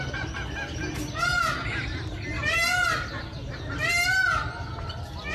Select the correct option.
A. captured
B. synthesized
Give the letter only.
A